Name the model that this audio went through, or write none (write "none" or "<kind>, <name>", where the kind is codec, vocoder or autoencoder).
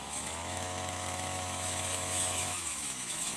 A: autoencoder, DAC-VAE